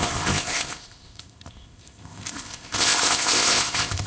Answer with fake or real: fake